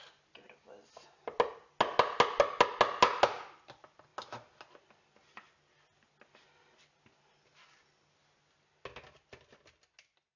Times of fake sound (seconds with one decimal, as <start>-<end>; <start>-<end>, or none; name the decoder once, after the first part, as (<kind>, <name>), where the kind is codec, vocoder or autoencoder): none